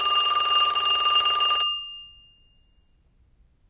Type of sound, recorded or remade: recorded